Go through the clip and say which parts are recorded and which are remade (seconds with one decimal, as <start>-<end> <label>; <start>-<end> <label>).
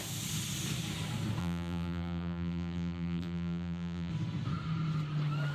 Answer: 0.0-1.4 recorded; 1.4-4.1 remade; 4.1-5.5 recorded